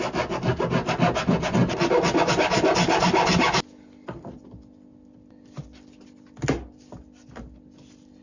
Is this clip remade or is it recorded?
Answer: recorded